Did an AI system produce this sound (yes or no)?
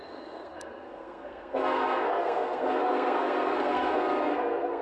yes